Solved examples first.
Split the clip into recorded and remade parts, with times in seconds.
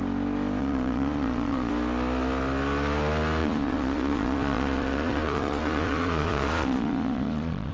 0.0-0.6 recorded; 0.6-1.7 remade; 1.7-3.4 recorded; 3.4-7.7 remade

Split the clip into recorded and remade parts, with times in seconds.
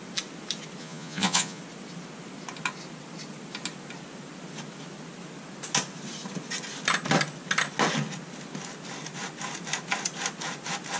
0.0-0.8 recorded; 0.8-1.6 remade; 1.6-11.0 recorded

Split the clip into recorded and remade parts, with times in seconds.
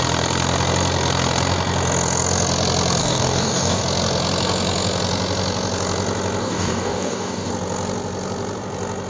0.0-3.0 recorded; 3.0-3.8 remade; 3.8-6.4 recorded; 6.4-7.5 remade; 7.5-9.1 recorded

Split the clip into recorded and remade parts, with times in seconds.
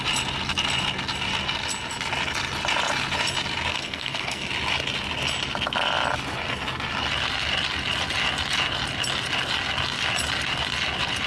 0.0-3.7 recorded; 3.7-4.5 remade; 4.5-11.3 recorded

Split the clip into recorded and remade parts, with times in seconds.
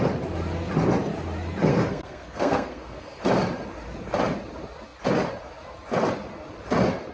0.0-1.7 recorded; 1.7-3.2 remade; 3.2-7.1 recorded